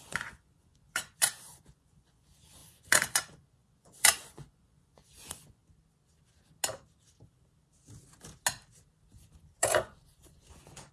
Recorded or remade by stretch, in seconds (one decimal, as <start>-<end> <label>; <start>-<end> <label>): 0.0-5.6 remade; 5.6-9.6 recorded; 9.6-10.9 remade